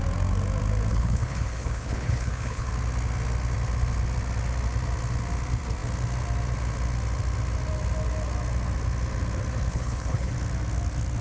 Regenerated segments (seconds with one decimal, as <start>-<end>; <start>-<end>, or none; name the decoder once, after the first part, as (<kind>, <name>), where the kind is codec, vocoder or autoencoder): 0.9-2.7 (codec, HILCodec); 9.7-10.3